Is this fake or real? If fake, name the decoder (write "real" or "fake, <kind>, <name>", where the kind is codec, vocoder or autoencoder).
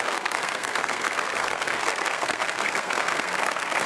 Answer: fake, codec, SNAC